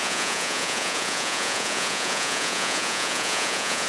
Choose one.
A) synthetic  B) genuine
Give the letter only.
A